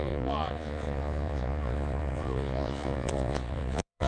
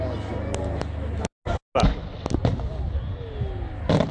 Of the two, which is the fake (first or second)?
first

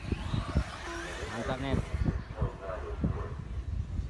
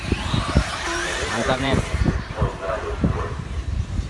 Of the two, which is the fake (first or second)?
second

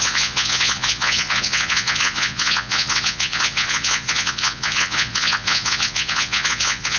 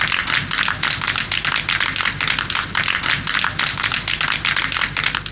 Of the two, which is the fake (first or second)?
first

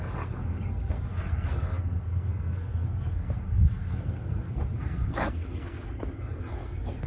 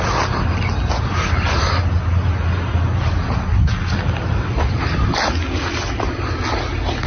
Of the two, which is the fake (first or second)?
first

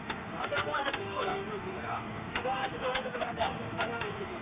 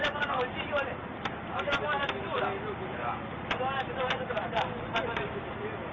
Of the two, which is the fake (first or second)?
first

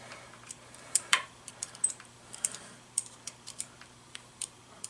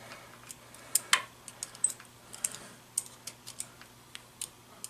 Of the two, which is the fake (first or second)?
first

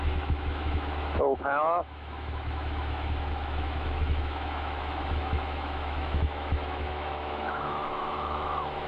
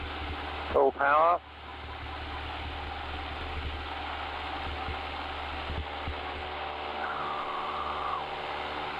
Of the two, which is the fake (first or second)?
first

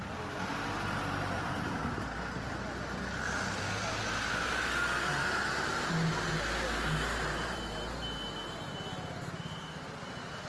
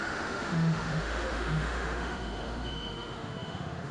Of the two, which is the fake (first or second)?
second